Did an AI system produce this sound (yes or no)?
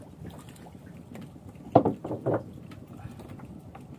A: yes